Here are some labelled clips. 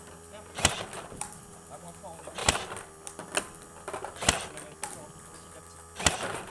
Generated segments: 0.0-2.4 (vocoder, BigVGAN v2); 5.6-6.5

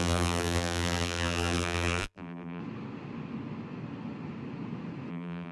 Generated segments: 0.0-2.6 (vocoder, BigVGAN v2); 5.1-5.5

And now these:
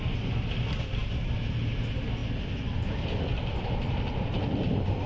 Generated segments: 1.0-1.7 (vocoder, BigVGAN v2)

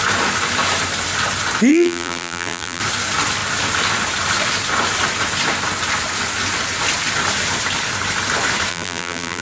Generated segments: 1.7-2.8 (vocoder, BigVGAN v2); 8.7-9.4

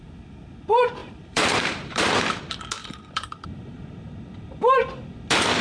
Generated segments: 1.0-2.4 (vocoder, BigVGAN v2); 2.8-3.9